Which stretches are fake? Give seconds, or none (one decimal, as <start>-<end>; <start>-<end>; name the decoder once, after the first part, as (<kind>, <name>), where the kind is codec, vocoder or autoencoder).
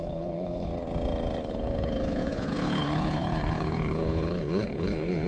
0.0-0.7 (codec, HILCodec); 1.4-5.3